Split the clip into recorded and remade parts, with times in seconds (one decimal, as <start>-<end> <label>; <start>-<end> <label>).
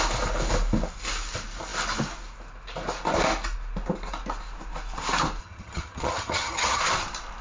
0.0-5.4 recorded; 5.4-6.8 remade; 6.8-7.4 recorded